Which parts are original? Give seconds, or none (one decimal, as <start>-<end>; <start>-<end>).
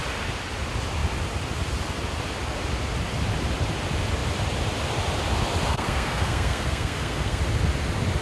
0.0-5.7; 7.4-8.2